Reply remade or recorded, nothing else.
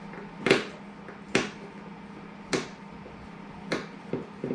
recorded